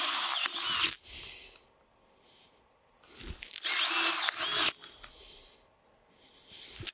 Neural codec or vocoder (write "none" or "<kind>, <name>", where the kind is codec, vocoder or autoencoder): none